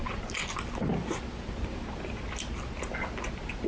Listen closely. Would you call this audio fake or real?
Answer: real